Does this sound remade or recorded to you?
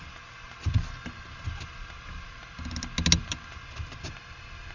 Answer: recorded